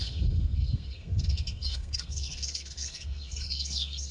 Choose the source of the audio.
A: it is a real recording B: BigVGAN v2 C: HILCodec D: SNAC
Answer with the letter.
D